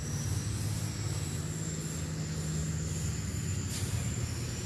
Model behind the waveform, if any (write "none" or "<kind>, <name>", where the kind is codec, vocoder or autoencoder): none